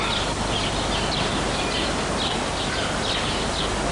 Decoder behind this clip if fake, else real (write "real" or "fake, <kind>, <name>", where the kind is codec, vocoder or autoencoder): real